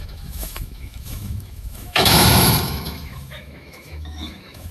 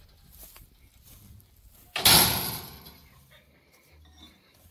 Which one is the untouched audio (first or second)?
second